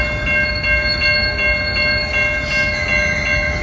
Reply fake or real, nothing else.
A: real